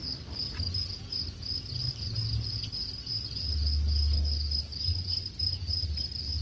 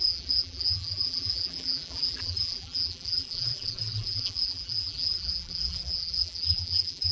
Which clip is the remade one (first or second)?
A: second